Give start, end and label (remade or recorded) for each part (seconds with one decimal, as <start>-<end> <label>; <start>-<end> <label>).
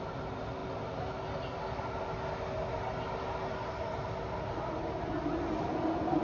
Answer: 0.0-6.2 recorded